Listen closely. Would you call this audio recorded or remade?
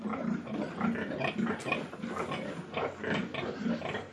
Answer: recorded